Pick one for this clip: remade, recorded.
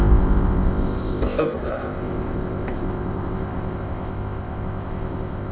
remade